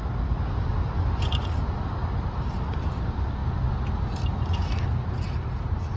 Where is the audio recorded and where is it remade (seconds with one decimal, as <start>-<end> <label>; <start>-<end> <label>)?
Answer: 0.0-6.0 recorded